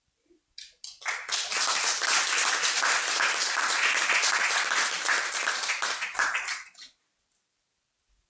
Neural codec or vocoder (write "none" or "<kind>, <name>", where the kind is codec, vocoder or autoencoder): none